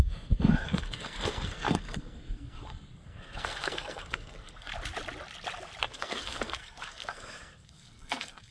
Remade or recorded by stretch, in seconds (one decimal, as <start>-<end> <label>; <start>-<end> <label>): 0.0-4.7 remade; 4.7-5.8 recorded; 5.8-8.5 remade

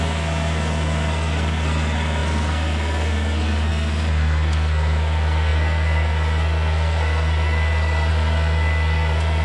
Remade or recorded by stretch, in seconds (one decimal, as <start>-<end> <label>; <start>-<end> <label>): 0.0-9.4 remade

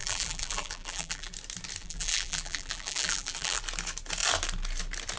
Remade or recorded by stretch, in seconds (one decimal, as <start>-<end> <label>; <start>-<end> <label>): 0.0-1.3 remade; 1.3-1.8 recorded; 1.8-3.6 remade; 3.6-5.2 recorded

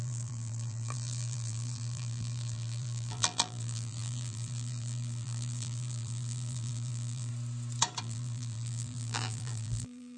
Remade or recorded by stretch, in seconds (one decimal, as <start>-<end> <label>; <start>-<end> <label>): 0.0-7.3 remade; 7.3-8.0 recorded; 8.0-10.2 remade